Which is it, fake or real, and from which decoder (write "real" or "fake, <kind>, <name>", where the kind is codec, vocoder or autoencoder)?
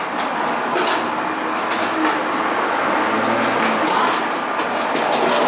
real